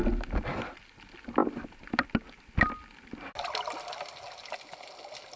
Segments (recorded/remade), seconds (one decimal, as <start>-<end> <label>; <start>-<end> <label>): 0.0-5.4 recorded